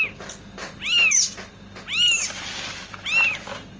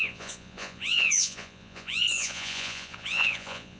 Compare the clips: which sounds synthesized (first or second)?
second